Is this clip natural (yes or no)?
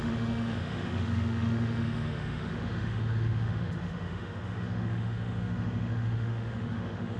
no